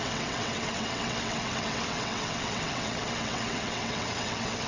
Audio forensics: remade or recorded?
remade